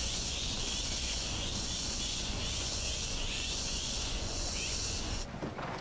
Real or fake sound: fake